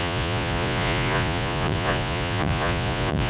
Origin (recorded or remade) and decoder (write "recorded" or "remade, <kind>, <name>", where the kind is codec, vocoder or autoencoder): remade, vocoder, Vocos